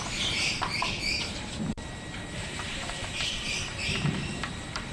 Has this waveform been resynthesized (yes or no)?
yes